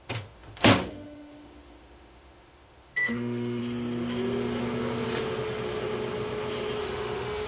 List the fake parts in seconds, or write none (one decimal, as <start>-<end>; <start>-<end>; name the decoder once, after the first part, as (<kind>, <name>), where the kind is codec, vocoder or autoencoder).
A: 0.0-3.6 (autoencoder, DAC-VAE); 6.8-7.5